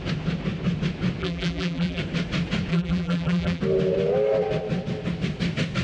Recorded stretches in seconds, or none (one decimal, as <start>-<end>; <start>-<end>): 0.0-1.2; 2.0-2.7; 3.6-5.8